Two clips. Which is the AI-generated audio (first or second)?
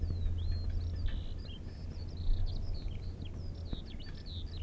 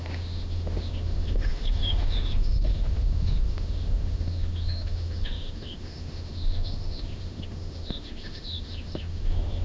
second